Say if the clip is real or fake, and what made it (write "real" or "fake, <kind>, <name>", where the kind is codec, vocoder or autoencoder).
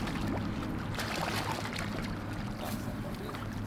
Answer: real